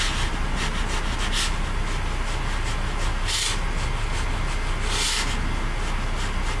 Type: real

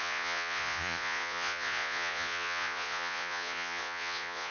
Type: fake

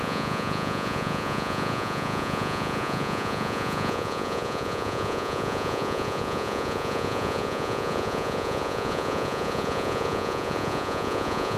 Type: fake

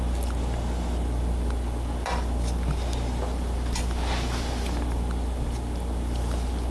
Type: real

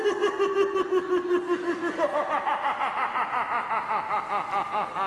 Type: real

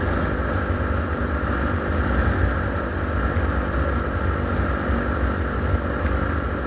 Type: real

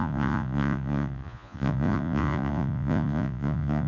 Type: fake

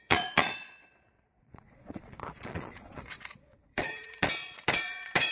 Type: fake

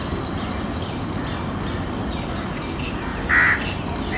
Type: real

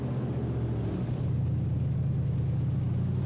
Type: real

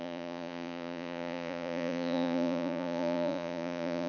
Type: fake